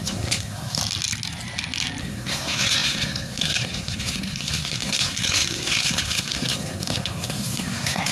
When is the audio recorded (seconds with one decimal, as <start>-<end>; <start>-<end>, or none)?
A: 0.8-2.0